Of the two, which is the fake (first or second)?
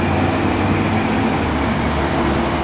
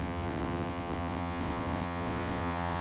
second